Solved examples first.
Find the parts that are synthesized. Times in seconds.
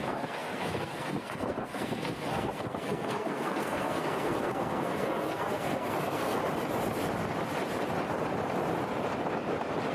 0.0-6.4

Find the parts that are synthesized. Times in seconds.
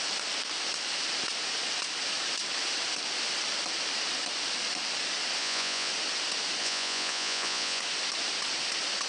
5.4-5.9; 6.6-7.8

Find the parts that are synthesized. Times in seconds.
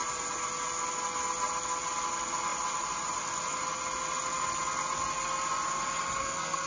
6.2-6.7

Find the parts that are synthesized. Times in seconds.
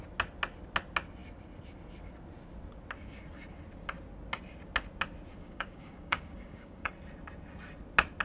5.3-6.9